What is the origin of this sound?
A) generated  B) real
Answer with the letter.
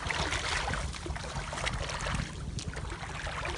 B